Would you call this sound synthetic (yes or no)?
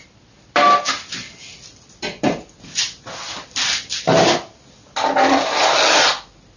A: no